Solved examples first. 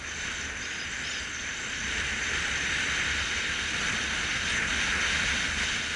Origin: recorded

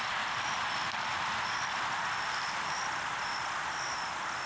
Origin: recorded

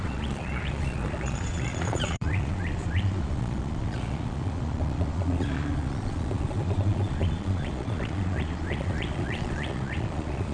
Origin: remade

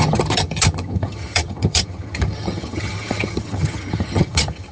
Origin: remade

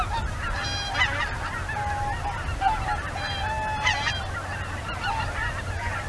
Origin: recorded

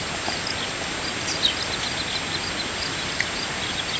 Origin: recorded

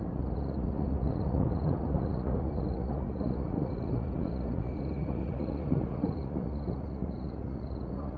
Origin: remade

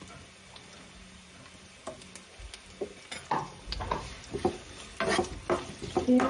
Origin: recorded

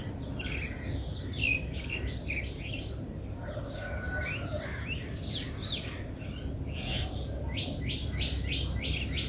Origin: recorded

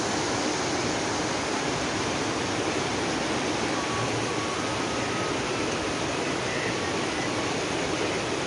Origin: recorded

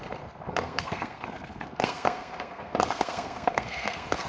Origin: remade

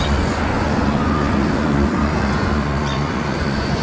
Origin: remade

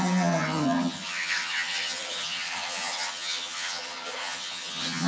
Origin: remade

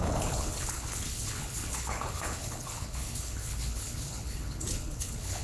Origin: remade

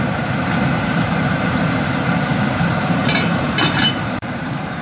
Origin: remade